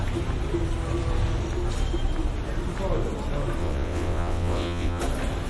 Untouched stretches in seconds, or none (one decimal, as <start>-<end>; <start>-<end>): 0.0-3.6; 5.0-5.5